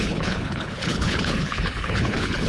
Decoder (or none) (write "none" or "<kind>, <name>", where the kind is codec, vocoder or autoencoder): codec, HILCodec